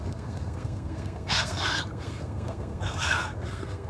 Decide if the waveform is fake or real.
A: fake